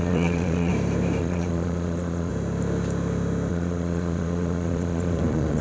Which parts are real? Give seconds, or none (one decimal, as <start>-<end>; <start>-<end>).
0.7-1.2; 2.3-3.5